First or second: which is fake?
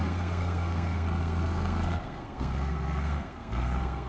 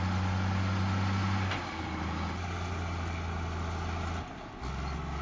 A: first